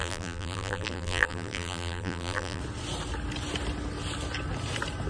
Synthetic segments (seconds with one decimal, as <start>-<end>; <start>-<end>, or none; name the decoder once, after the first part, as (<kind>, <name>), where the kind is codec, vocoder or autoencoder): 0.0-2.6 (vocoder, BigVGAN v2)